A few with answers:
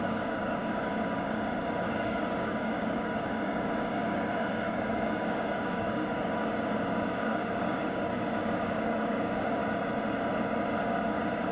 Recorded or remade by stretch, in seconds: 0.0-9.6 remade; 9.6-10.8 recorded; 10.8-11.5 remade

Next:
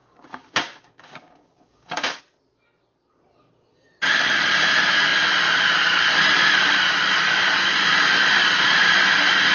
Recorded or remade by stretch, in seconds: 0.0-2.2 remade; 2.2-9.5 recorded

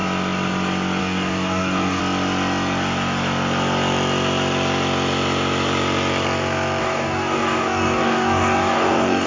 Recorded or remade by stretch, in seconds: 0.0-1.0 recorded; 1.0-2.0 remade; 2.0-6.8 recorded; 6.8-9.3 remade

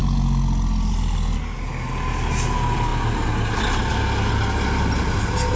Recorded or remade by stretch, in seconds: 0.0-5.6 recorded

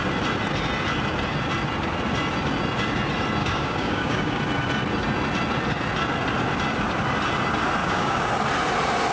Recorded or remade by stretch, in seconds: 0.0-3.4 recorded; 3.4-4.4 remade; 4.4-7.8 recorded; 7.8-8.3 remade; 8.3-9.1 recorded

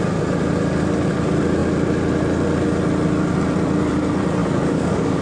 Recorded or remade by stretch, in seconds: 0.0-4.4 recorded; 4.4-5.2 remade

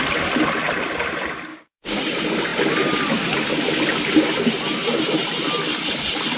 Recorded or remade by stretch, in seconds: 0.0-1.5 recorded; 1.5-2.0 remade; 2.0-6.4 recorded

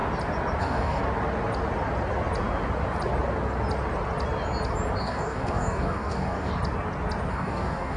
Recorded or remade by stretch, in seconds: 0.0-0.6 recorded; 0.6-1.0 remade; 1.0-5.0 recorded; 5.0-6.5 remade; 6.5-7.3 recorded; 7.3-8.0 remade